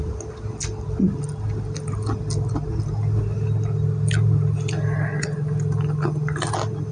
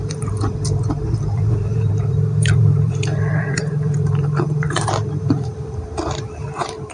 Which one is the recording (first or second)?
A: first